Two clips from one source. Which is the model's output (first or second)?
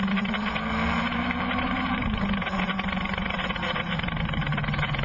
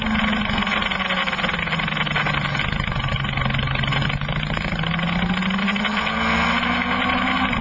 first